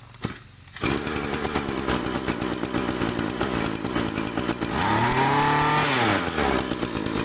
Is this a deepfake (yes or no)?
no